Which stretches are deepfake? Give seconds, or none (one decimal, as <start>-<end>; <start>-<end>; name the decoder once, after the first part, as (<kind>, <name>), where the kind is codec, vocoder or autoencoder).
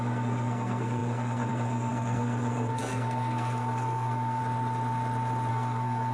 0.0-4.4 (codec, SNAC); 5.5-6.1